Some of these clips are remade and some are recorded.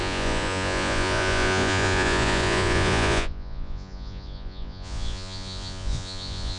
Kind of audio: remade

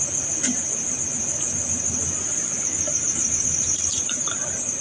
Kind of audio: recorded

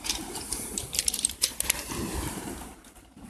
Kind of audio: remade